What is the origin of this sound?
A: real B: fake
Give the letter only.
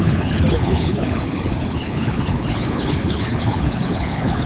B